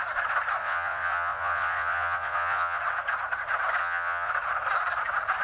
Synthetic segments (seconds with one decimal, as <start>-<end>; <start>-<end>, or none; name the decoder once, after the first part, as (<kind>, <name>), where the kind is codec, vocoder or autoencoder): 0.6-2.8 (vocoder, Vocos); 3.8-4.3